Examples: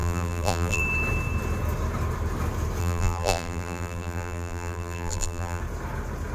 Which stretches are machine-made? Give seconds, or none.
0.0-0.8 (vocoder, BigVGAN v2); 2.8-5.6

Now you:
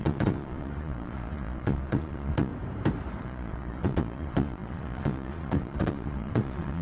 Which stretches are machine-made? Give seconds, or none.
0.0-2.5 (vocoder, Vocos); 3.2-6.8

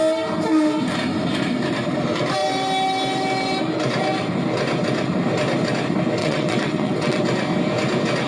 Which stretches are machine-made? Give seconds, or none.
6.2-7.2 (vocoder, WaveNeXt)